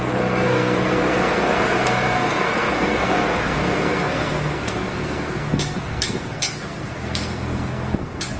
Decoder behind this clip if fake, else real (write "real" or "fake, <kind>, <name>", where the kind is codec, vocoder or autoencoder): fake, codec, SNAC